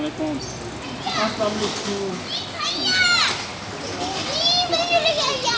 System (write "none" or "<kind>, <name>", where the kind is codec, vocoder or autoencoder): none